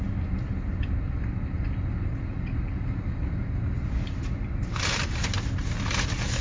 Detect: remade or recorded recorded